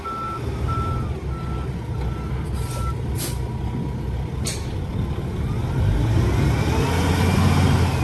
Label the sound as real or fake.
real